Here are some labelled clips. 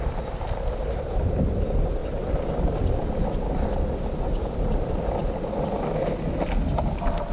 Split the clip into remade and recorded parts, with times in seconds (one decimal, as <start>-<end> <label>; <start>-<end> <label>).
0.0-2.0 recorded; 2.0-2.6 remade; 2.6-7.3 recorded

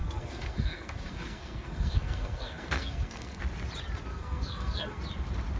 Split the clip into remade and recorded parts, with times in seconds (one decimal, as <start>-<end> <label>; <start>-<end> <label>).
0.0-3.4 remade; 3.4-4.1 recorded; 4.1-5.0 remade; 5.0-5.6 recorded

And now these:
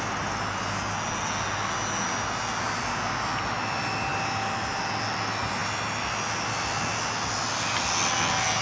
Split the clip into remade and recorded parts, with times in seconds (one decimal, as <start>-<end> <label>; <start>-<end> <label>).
0.0-8.6 recorded

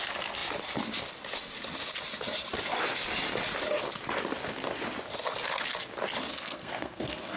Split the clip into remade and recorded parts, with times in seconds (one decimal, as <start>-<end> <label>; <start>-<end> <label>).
0.0-6.3 recorded; 6.3-7.4 remade

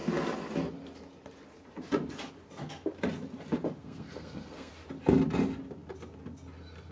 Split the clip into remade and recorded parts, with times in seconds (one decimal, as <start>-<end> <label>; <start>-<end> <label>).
0.0-3.8 recorded; 3.8-4.7 remade; 4.7-6.9 recorded